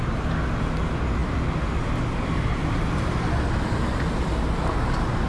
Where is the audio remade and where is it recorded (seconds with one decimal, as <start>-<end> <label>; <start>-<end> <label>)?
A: 0.0-5.3 recorded